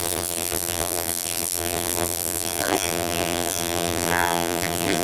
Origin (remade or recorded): remade